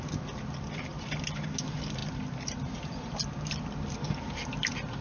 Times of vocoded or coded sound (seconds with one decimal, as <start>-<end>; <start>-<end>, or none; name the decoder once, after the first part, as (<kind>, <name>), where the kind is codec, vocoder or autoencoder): none